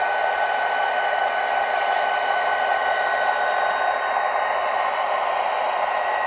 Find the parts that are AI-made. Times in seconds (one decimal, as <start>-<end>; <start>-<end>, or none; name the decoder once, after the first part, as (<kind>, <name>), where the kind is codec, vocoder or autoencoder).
2.8-3.4 (vocoder, BigVGAN v2)